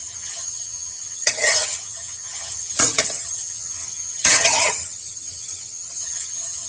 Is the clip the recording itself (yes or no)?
no